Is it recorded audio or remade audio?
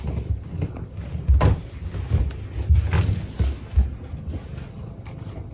recorded